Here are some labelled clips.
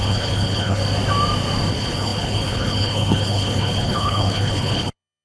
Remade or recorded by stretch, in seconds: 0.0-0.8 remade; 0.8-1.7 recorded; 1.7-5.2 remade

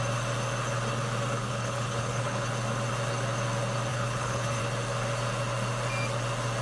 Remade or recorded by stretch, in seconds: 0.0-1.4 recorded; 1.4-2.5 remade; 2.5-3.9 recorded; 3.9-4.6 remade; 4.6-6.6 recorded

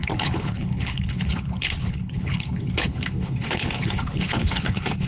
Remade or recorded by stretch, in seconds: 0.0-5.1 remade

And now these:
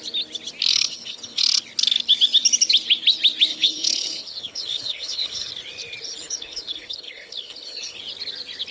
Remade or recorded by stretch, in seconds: 0.0-0.7 recorded; 0.7-1.4 remade; 1.4-3.5 recorded; 3.5-5.5 remade; 5.5-6.2 recorded; 6.2-8.0 remade; 8.0-8.7 recorded